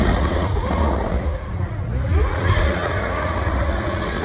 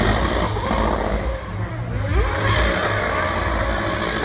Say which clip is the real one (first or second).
second